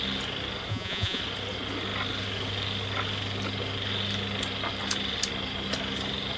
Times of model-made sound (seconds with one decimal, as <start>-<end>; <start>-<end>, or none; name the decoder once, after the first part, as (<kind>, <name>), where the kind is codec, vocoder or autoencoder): 0.7-1.2 (vocoder, Vocos)